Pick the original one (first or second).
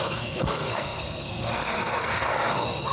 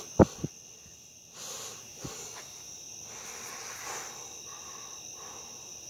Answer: second